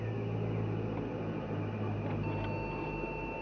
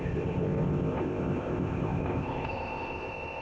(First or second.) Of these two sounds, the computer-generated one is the second